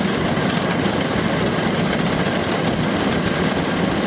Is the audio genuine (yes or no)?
yes